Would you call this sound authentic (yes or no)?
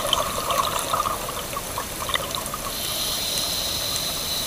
no